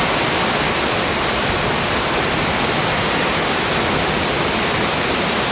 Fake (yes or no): no